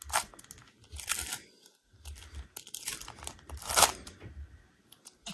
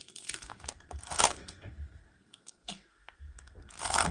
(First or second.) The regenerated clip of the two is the second